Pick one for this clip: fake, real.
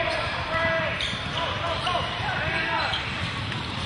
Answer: fake